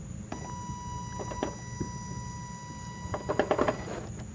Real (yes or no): yes